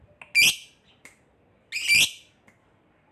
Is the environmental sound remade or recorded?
recorded